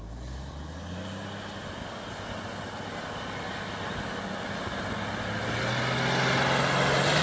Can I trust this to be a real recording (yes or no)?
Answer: yes